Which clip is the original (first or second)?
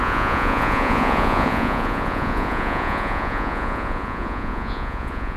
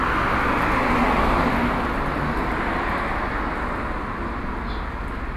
second